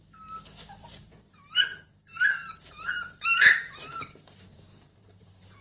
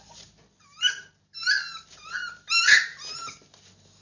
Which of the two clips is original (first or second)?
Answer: second